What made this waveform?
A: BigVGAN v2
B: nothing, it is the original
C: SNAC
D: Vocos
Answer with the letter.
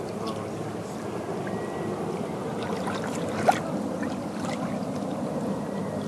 B